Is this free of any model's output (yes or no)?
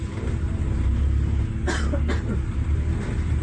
yes